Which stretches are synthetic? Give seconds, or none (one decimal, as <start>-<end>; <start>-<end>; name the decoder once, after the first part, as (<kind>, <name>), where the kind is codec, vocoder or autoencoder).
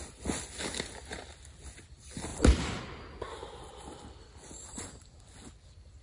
none